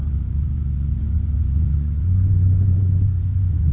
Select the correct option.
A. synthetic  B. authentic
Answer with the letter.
A